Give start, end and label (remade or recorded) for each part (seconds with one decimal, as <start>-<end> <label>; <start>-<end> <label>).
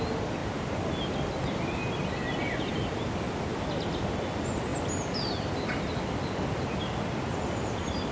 0.0-8.1 recorded